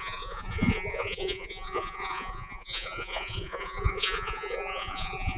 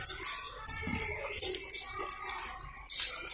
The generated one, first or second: first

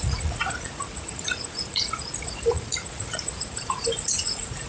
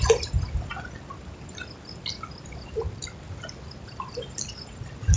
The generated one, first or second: first